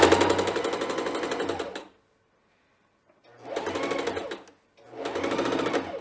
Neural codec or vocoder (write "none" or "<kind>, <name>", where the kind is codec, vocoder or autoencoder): none